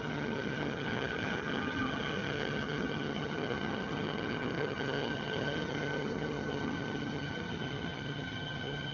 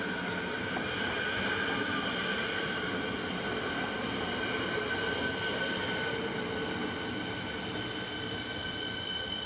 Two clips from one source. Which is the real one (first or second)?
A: second